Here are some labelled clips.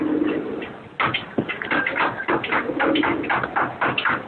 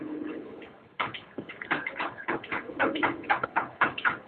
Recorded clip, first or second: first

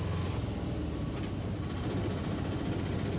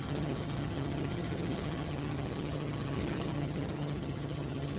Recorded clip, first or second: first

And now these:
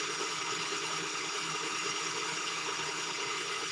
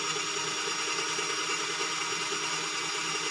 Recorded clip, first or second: second